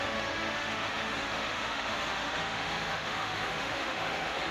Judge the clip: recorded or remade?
remade